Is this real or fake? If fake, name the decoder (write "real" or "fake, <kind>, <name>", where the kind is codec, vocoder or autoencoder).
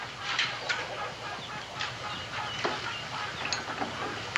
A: real